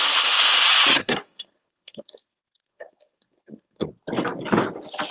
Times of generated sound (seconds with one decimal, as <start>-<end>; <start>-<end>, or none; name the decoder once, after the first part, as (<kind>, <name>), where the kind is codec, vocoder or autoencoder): 1.0-3.9 (codec, SNAC)